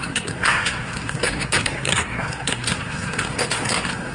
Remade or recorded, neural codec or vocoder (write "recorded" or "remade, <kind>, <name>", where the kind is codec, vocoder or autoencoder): remade, codec, SNAC